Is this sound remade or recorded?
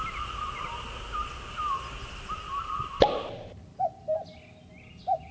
recorded